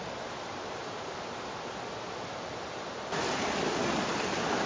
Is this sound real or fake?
fake